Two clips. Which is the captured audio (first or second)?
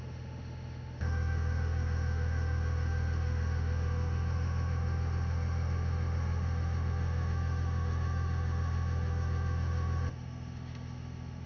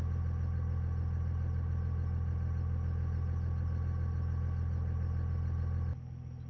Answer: second